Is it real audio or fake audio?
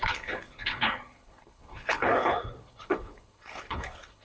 fake